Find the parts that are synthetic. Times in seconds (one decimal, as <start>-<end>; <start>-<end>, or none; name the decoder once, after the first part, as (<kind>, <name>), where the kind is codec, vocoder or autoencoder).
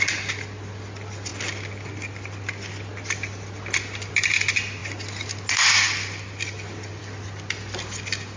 none